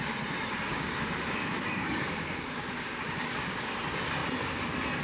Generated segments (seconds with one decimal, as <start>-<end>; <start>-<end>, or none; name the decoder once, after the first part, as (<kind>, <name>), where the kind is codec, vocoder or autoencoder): 0.7-3.7 (codec, DAC)